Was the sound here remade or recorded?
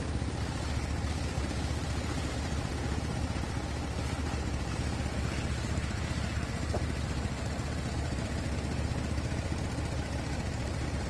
remade